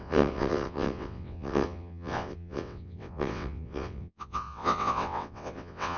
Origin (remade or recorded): remade